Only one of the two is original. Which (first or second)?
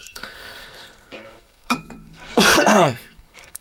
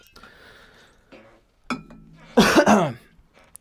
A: second